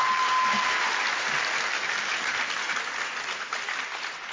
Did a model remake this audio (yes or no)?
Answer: no